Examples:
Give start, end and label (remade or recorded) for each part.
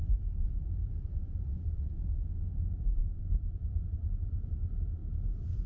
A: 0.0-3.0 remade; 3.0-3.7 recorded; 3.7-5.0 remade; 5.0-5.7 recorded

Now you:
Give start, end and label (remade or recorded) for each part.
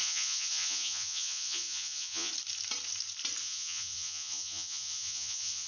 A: 0.0-2.3 remade; 2.3-3.4 recorded; 3.4-5.7 remade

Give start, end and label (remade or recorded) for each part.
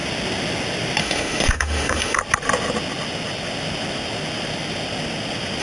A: 0.0-1.0 recorded; 1.0-2.2 remade; 2.2-5.6 recorded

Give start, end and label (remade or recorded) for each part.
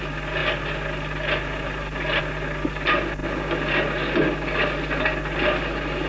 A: 0.0-6.1 recorded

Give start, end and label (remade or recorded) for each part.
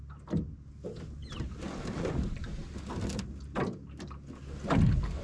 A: 0.0-5.2 recorded